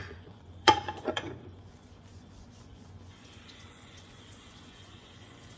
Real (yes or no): no